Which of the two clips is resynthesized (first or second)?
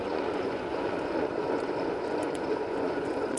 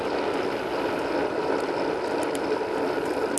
first